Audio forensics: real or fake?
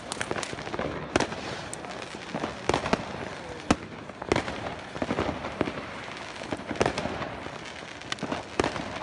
real